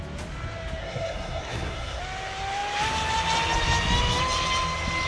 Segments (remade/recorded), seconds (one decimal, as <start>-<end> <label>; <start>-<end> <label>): 0.0-0.8 recorded; 0.8-2.0 remade; 2.0-5.1 recorded